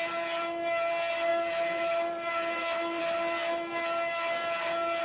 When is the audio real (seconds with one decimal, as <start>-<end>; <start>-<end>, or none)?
0.0-1.3; 3.0-5.0